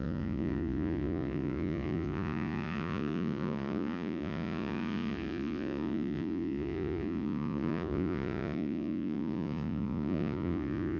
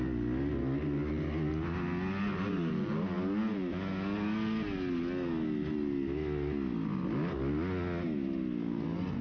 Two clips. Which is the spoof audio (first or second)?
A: first